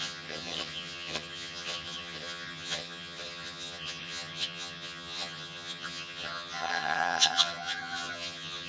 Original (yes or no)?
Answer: no